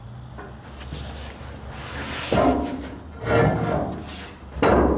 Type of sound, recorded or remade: recorded